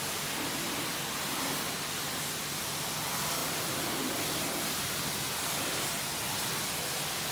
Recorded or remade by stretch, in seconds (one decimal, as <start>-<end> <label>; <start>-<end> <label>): 0.0-7.3 recorded

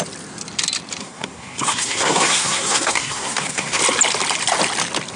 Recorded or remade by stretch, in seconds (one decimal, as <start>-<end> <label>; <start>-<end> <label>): 0.0-1.0 recorded; 1.0-3.8 remade; 3.8-5.2 recorded

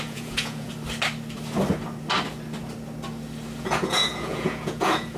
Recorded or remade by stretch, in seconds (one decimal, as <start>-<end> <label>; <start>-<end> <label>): 0.0-0.7 remade; 0.7-3.6 recorded; 3.6-5.2 remade